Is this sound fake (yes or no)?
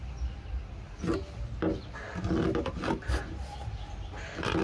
no